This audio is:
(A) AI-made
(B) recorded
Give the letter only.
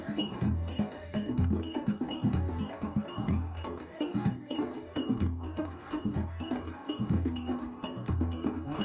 A